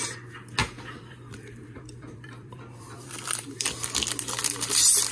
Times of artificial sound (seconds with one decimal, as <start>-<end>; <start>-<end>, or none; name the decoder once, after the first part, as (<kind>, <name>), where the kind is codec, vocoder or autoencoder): 0.6-3.7 (vocoder, BigVGAN v2)